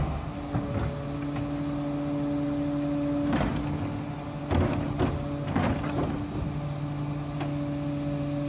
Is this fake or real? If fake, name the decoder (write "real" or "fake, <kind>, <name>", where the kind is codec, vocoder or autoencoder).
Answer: real